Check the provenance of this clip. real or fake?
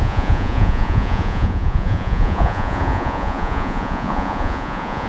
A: fake